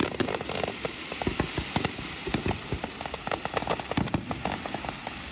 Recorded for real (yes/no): yes